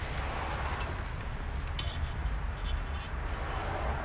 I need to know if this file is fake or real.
real